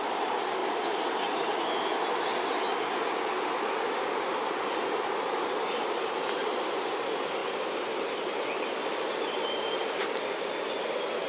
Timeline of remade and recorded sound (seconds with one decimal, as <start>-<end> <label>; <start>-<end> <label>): 0.0-11.3 recorded